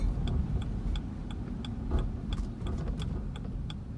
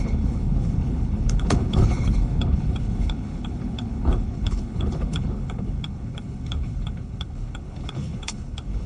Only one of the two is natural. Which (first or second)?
first